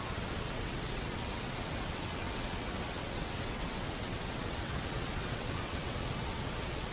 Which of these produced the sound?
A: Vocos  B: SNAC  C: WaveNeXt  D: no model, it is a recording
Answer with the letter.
C